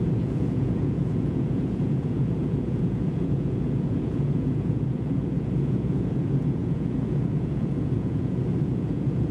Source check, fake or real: fake